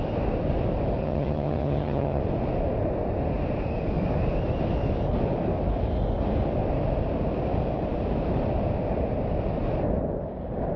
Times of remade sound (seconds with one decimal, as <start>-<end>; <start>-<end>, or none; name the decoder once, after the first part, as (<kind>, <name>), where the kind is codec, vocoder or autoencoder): 1.0-2.2 (vocoder, HiFi-GAN)